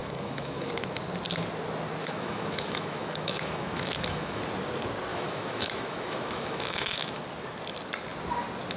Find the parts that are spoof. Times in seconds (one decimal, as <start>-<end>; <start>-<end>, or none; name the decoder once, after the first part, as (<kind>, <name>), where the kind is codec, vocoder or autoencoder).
0.0-0.7 (autoencoder, DAC-VAE); 2.0-4.4; 5.1-7.2